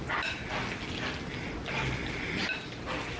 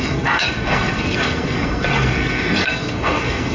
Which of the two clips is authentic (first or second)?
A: first